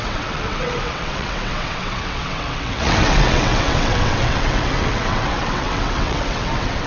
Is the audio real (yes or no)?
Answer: no